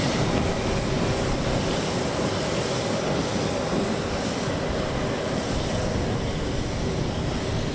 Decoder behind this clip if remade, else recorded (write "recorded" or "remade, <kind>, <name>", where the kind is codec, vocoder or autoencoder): recorded